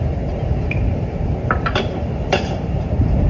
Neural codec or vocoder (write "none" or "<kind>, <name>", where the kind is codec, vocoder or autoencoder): vocoder, BigVGAN v2